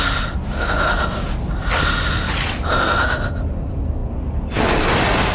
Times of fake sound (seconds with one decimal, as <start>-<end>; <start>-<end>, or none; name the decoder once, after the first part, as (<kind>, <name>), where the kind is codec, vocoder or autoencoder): none